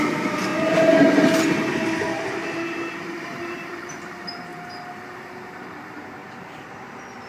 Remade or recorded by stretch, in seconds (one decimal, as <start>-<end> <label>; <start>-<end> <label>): 0.0-0.5 remade; 0.5-3.2 recorded; 3.2-4.5 remade; 4.5-5.7 recorded; 5.7-7.3 remade